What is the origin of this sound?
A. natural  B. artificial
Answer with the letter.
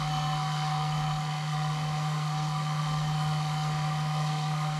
B